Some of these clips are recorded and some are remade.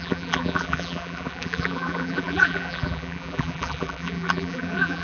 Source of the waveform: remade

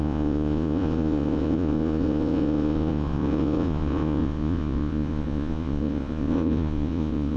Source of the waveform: remade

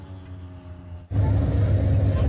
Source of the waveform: recorded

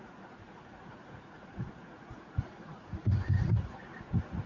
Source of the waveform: remade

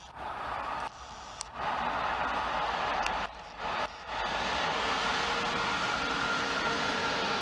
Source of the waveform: recorded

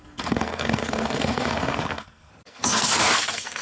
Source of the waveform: remade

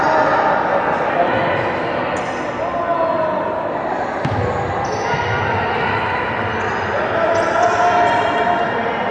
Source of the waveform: recorded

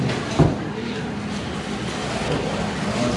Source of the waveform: recorded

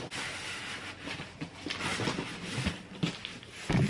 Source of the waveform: recorded